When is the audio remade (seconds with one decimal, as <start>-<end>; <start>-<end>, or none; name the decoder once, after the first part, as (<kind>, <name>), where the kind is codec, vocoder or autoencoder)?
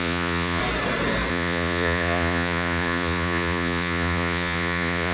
0.0-0.6 (vocoder, Vocos); 1.3-5.1